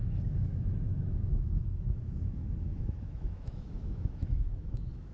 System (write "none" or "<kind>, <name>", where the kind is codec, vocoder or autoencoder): autoencoder, DAC-VAE